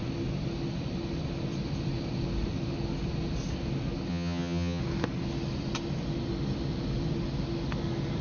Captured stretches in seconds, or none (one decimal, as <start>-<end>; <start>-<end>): 0.0-4.1; 4.8-8.2